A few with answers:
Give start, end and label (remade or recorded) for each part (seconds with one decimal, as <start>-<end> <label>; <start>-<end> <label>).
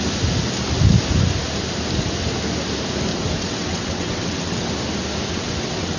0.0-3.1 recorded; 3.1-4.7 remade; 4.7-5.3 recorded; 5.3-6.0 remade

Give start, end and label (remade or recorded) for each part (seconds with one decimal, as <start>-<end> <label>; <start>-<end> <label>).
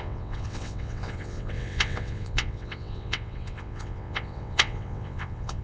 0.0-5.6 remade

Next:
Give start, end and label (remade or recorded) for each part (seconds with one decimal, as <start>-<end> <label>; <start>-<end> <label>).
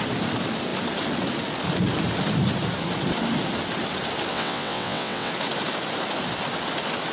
0.0-4.3 recorded; 4.3-5.3 remade; 5.3-7.1 recorded